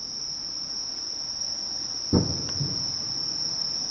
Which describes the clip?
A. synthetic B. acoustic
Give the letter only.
B